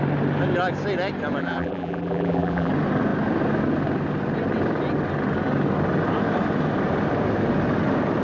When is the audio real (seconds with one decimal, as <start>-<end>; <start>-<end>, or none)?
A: 0.0-1.4; 2.7-8.2